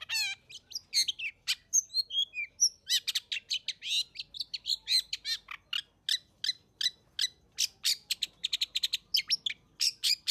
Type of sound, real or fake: real